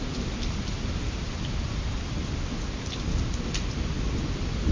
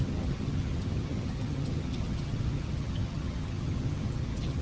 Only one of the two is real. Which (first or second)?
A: first